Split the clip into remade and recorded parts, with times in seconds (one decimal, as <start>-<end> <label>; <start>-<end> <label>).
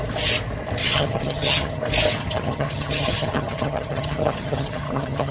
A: 0.0-0.8 recorded; 0.8-1.8 remade; 1.8-2.2 recorded; 2.2-5.3 remade